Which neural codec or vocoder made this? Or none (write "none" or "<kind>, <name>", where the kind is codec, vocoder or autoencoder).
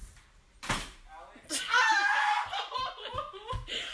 none